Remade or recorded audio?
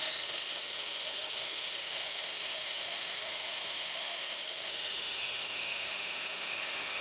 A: remade